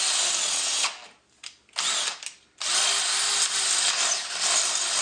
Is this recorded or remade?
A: recorded